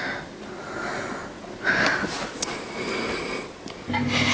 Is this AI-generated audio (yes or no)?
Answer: no